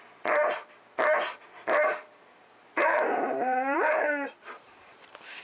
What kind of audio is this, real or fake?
fake